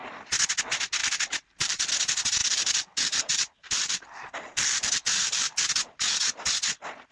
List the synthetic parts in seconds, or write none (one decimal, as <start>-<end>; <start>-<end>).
1.0-1.9; 2.4-5.7